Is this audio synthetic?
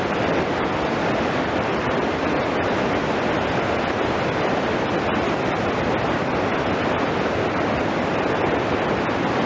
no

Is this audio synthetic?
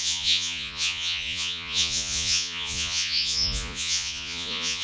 yes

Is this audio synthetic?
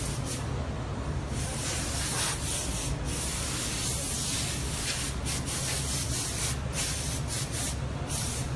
no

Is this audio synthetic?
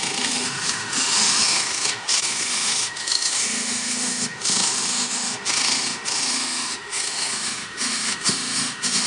yes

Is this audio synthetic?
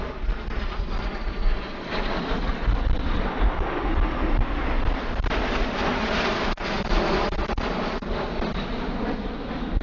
no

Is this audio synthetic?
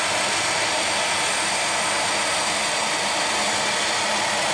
no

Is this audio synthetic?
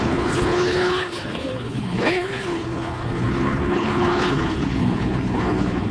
yes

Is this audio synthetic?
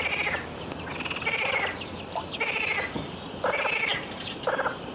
no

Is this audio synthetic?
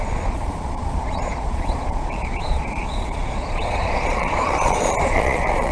yes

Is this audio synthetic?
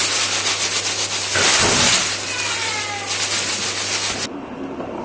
no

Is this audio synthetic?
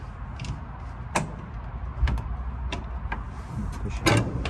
no